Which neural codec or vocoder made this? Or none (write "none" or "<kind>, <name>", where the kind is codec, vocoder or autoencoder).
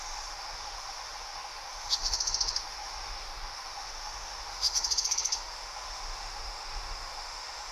autoencoder, DAC-VAE